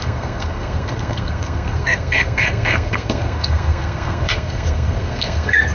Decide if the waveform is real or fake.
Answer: fake